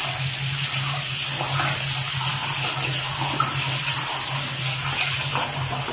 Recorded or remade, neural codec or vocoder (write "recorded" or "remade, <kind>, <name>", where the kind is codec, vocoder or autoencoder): recorded